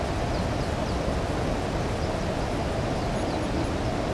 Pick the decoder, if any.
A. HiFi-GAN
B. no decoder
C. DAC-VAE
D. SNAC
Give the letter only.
B